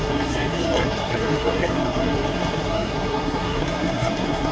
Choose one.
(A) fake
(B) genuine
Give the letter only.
A